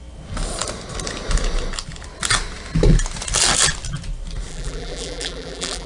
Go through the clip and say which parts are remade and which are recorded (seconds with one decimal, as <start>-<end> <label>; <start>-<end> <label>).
0.0-4.5 recorded; 4.5-5.9 remade